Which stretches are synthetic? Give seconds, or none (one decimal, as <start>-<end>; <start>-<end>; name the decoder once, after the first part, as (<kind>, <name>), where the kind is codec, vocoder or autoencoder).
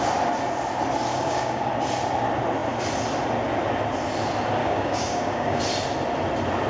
1.1-1.7 (codec, DAC); 4.6-5.6